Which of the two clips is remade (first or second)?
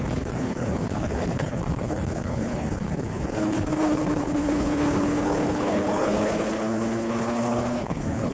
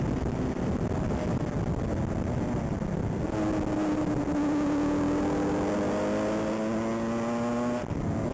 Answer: first